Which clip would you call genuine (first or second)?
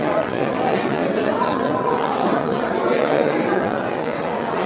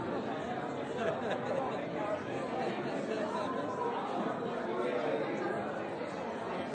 second